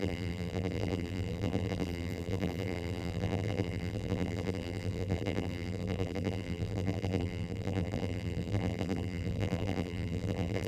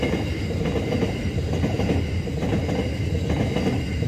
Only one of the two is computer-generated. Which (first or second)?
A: first